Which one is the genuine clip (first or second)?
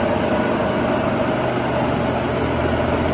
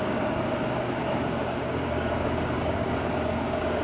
first